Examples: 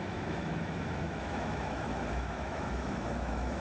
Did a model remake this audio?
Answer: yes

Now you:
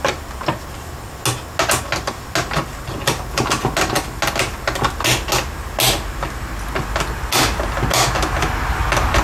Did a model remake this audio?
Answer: no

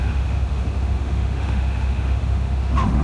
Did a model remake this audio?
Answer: yes